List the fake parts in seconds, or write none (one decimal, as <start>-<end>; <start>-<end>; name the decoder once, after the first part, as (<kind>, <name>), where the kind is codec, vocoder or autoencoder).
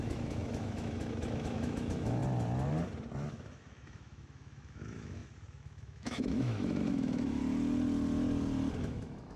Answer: 0.0-2.2 (autoencoder, DAC-VAE); 3.3-7.4; 8.8-9.4